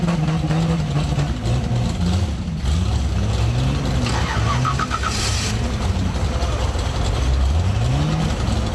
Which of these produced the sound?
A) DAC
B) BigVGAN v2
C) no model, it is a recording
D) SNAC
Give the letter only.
C